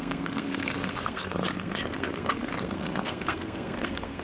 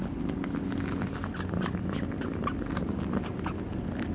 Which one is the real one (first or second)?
second